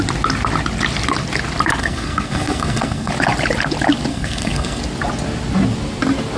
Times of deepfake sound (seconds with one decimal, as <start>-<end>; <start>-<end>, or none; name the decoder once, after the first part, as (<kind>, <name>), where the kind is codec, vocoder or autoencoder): 1.8-3.1 (codec, SNAC); 4.1-4.8